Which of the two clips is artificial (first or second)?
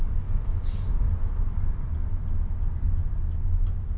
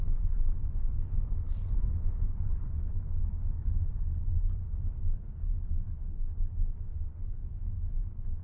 second